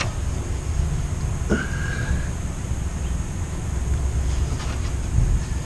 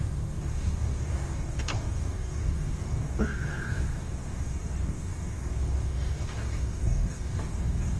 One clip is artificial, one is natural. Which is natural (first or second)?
first